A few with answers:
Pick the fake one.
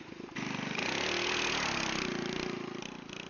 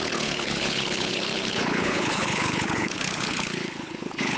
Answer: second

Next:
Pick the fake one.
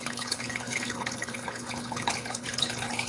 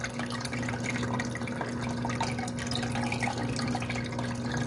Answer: first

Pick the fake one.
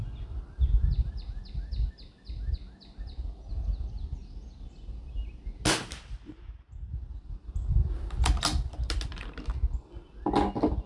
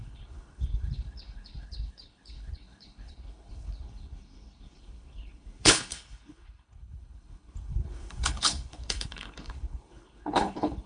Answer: second